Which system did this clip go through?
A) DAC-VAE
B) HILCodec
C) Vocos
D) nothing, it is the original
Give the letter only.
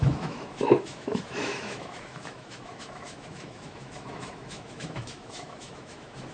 A